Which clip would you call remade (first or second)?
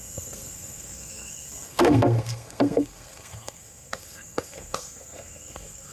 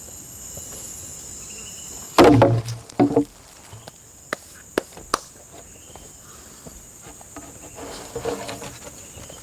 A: first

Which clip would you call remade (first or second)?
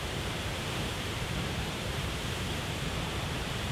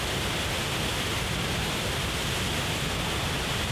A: first